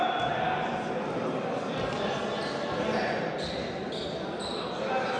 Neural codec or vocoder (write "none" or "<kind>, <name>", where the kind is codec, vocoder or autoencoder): none